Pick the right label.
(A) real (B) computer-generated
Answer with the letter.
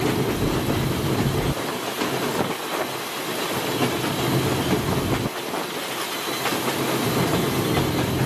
A